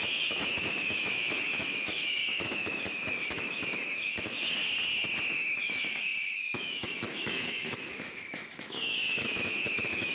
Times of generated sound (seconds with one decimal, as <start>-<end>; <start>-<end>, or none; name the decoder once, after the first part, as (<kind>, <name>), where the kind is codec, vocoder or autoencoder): 0.0-4.6 (autoencoder, DAC-VAE); 5.3-10.1